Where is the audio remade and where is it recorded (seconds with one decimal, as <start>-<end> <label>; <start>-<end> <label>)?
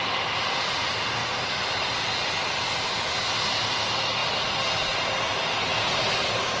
0.0-1.2 recorded; 1.2-2.5 remade; 2.5-4.2 recorded; 4.2-6.6 remade